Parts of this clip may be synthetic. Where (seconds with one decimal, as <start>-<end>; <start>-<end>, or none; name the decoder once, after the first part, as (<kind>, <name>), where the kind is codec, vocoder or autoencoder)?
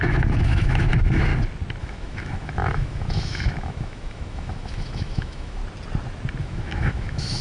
0.0-1.3 (autoencoder, DAC-VAE); 1.8-5.6; 6.4-7.4